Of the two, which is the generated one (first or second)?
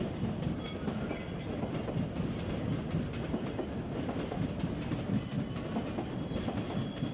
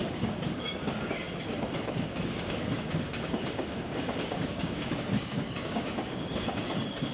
second